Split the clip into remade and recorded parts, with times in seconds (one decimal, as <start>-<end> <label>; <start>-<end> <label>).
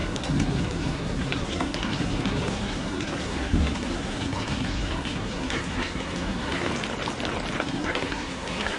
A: 0.0-6.7 remade; 6.7-7.6 recorded; 7.6-8.8 remade